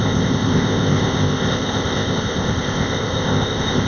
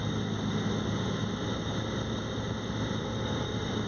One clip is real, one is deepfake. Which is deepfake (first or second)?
first